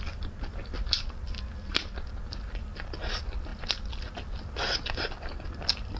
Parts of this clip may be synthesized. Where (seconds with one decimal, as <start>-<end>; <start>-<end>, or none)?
none